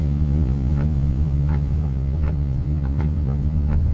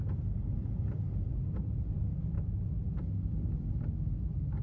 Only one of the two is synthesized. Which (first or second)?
first